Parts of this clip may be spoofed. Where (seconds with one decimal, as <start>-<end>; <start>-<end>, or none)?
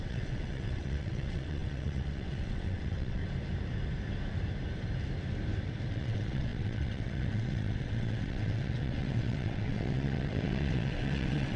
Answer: 0.0-3.2; 5.9-11.6